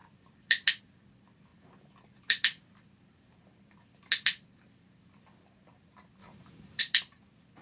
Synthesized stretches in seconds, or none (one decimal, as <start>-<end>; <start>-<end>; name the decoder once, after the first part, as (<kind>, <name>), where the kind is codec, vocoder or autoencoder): 6.2-6.8 (vocoder, BigVGAN v2)